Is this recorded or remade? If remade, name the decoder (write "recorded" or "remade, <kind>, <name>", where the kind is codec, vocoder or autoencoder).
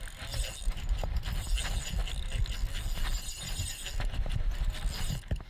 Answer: recorded